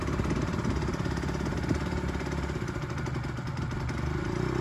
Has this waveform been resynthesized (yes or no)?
no